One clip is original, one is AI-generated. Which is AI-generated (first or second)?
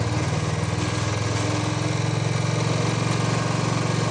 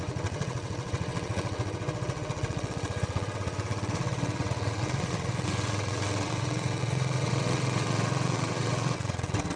second